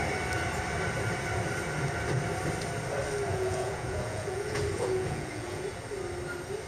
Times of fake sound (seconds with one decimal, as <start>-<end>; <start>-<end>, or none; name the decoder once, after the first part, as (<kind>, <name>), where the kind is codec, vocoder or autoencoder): 3.3-5.8 (vocoder, Vocos)